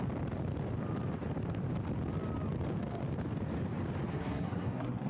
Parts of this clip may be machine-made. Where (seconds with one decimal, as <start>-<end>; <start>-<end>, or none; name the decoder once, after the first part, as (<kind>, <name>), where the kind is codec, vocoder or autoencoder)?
4.1-5.1 (codec, SNAC)